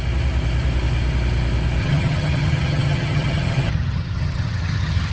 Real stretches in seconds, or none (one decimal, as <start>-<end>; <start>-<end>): 0.0-1.8